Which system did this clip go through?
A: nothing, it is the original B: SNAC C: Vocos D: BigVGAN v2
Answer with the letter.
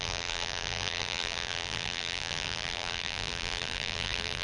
D